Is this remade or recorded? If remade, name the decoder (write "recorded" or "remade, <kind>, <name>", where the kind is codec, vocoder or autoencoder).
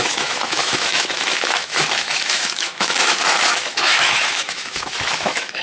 remade, autoencoder, DAC-VAE